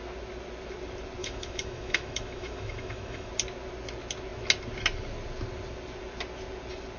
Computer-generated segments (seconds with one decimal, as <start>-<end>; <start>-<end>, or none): 1.2-3.3